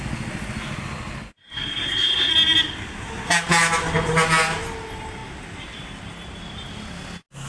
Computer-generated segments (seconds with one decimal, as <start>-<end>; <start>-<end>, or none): 1.4-2.3